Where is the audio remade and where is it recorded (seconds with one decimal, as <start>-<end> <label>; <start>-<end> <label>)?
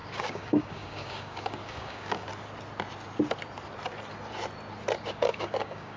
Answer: 0.0-2.3 remade; 2.3-5.1 recorded; 5.1-6.0 remade